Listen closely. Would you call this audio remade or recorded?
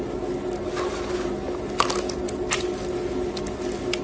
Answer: recorded